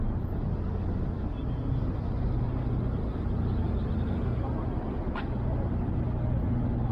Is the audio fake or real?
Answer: real